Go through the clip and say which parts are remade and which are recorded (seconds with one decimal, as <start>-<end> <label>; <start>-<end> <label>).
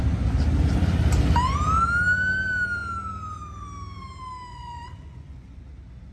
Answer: 0.0-4.5 recorded; 4.5-5.6 remade; 5.6-6.1 recorded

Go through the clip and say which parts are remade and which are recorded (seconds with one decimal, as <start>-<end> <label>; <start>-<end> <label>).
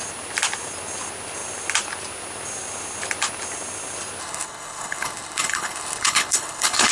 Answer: 0.0-4.2 recorded; 4.2-6.9 remade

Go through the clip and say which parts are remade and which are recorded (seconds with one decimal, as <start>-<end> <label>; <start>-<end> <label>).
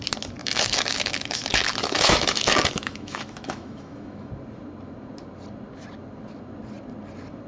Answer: 0.0-0.4 recorded; 0.4-4.3 remade; 4.3-7.5 recorded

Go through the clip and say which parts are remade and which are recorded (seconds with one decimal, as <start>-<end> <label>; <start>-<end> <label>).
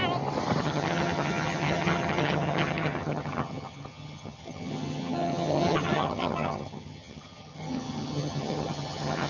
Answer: 0.0-0.6 recorded; 0.6-9.3 remade